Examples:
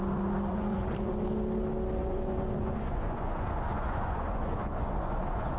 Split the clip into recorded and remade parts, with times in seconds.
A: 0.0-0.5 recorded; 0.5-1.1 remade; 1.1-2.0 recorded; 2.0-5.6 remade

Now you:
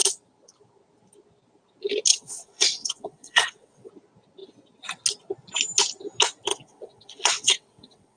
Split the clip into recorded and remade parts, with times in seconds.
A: 0.0-2.1 recorded; 2.1-3.9 remade; 3.9-6.5 recorded; 6.5-8.2 remade

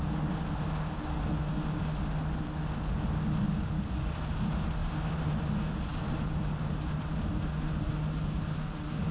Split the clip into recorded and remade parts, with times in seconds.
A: 0.0-4.8 recorded; 4.8-5.4 remade; 5.4-5.9 recorded; 5.9-6.8 remade; 6.8-9.1 recorded

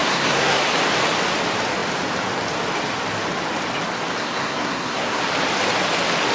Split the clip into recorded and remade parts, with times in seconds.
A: 0.0-0.6 remade; 0.6-4.2 recorded; 4.2-5.2 remade; 5.2-6.3 recorded

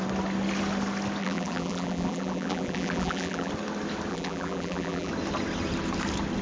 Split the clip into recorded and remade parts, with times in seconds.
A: 0.0-1.2 recorded; 1.2-3.5 remade; 3.5-4.1 recorded; 4.1-5.1 remade; 5.1-6.4 recorded

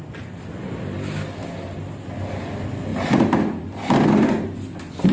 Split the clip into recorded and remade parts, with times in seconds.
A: 0.0-2.9 recorded; 2.9-3.4 remade; 3.4-5.1 recorded

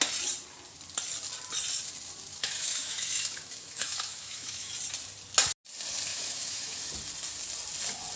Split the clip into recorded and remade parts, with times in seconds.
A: 0.0-2.3 recorded; 2.3-4.7 remade; 4.7-6.1 recorded; 6.1-6.9 remade; 6.9-8.2 recorded